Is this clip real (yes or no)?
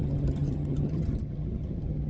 no